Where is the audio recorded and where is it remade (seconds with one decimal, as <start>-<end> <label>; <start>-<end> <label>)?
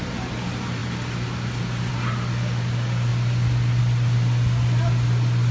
0.0-5.5 recorded